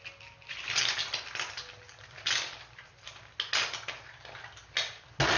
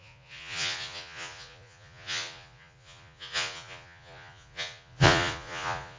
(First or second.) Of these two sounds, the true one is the first